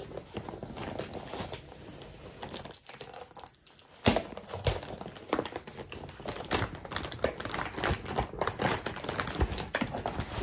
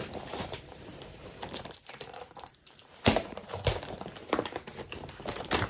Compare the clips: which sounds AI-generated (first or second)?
second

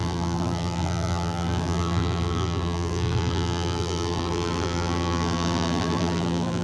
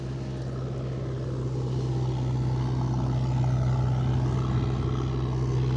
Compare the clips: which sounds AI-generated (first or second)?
first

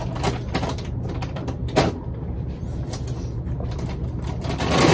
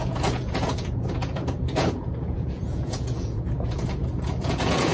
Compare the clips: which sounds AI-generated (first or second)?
second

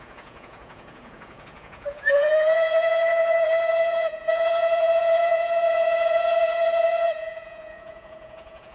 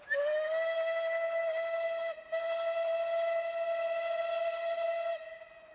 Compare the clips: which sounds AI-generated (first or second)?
first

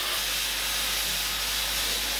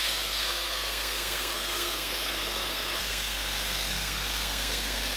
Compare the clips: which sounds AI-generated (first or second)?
second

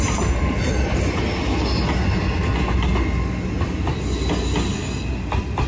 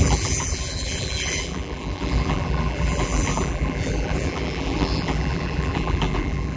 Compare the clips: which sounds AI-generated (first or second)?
second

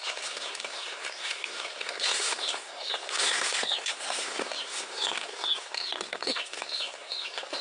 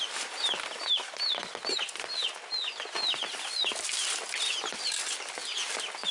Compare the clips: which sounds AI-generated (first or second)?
first